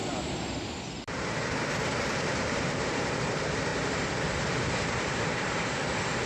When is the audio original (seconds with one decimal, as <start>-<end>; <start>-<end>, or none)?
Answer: 0.0-1.1; 3.7-4.2